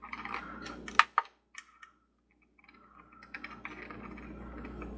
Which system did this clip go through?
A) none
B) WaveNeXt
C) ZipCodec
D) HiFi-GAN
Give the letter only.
A